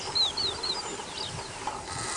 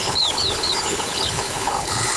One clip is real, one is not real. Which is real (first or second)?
first